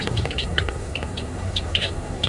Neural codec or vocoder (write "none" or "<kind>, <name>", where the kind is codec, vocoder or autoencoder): codec, SNAC